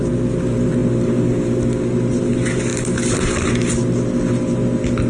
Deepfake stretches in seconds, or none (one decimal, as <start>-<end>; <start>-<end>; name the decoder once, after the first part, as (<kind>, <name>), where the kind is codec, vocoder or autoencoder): none